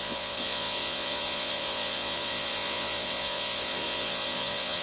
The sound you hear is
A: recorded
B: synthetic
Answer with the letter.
B